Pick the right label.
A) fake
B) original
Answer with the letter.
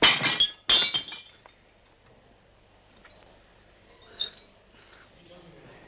B